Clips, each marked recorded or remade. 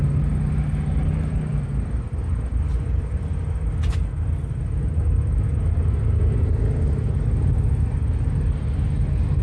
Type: recorded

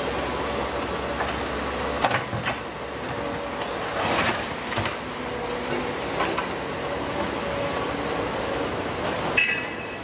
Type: recorded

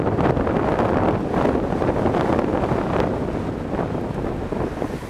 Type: recorded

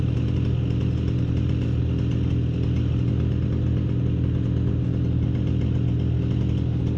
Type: recorded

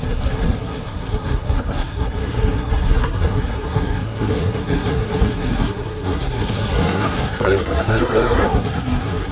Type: remade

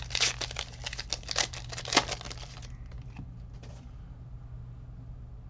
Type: recorded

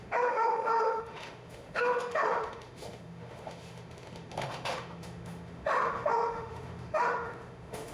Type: remade